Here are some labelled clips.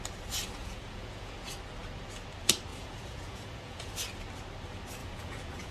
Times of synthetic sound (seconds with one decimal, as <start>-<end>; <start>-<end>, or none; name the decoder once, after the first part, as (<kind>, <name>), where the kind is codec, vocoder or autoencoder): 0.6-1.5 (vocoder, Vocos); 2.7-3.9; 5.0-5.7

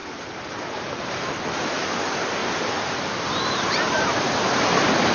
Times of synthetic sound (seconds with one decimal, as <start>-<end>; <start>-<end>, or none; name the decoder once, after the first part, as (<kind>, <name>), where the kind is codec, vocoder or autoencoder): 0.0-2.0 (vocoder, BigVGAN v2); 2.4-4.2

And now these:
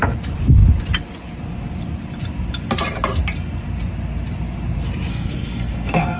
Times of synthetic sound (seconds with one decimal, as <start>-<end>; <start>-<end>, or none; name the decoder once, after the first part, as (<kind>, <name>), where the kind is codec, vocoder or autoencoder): 5.1-6.2 (codec, SNAC)

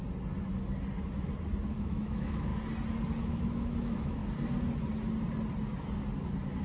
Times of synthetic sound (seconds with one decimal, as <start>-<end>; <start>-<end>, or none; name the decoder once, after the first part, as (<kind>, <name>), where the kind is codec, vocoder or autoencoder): 1.7-2.5 (autoencoder, DAC-VAE); 3.2-4.2

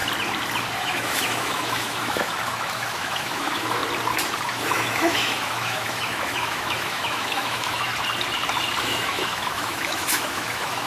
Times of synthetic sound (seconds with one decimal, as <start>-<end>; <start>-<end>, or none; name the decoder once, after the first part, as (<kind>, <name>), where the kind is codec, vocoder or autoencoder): 0.8-3.8 (autoencoder, DAC-VAE); 4.5-7.9; 8.8-10.9